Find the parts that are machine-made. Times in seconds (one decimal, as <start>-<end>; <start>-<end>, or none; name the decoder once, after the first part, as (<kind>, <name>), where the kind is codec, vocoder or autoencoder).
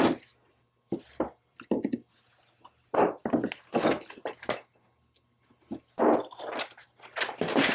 none